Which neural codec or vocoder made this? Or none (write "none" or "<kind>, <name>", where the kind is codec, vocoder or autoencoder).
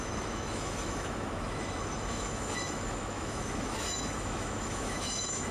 autoencoder, DAC-VAE